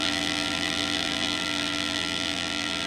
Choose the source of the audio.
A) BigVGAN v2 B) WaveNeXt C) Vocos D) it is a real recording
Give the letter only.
A